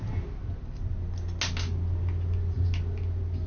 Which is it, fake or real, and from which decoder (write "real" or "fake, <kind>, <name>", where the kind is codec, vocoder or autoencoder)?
real